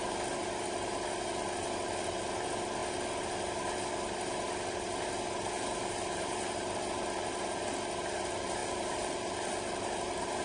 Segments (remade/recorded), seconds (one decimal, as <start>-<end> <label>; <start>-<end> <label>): 0.0-10.4 recorded